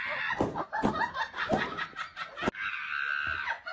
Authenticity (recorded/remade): recorded